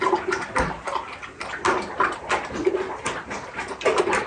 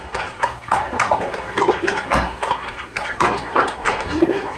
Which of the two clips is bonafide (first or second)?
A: first